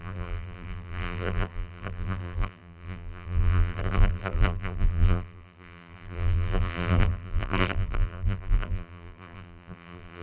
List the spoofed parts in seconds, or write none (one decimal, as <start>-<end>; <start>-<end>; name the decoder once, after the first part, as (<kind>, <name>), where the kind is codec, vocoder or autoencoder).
0.0-10.2 (vocoder, BigVGAN v2)